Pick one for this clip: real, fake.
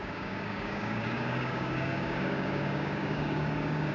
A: fake